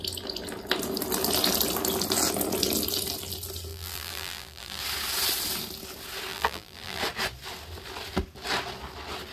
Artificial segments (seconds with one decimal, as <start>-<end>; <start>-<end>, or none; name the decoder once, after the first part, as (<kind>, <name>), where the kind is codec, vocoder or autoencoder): 3.7-4.8 (vocoder, BigVGAN v2); 6.3-7.0